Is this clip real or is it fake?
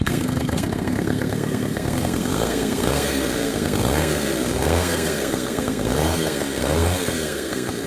fake